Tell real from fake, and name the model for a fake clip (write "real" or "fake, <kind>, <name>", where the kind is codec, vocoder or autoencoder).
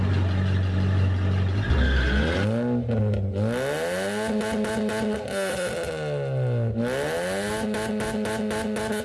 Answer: real